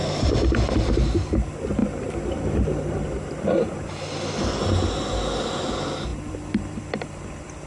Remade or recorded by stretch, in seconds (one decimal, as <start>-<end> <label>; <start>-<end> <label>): 0.0-0.9 remade; 0.9-1.8 recorded; 1.8-3.8 remade; 3.8-6.1 recorded; 6.1-7.3 remade; 7.3-7.7 recorded